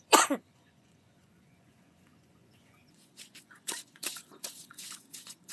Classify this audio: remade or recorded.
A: remade